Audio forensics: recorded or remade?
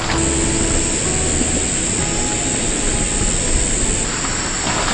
recorded